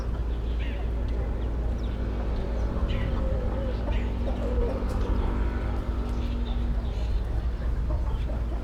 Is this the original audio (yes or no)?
yes